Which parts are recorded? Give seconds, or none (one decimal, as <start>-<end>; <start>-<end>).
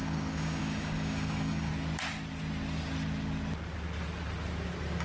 1.7-5.0